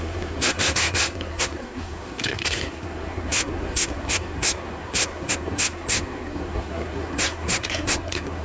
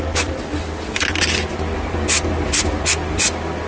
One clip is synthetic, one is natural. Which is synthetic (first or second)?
first